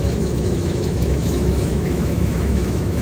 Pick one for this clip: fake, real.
fake